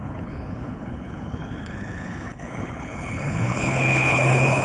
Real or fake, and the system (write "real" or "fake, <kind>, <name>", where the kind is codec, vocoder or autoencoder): fake, codec, HILCodec